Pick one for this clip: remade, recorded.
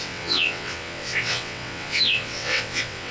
remade